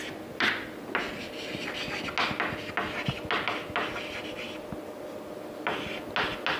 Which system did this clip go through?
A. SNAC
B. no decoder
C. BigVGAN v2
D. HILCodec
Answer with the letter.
B